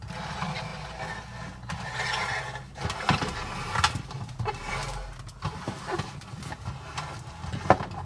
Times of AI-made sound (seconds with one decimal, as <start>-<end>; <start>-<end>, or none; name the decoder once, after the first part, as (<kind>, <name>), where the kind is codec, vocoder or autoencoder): none